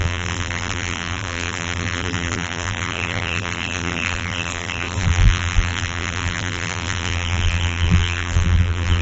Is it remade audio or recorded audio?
remade